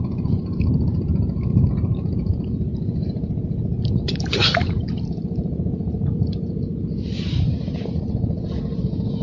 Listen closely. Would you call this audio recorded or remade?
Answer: remade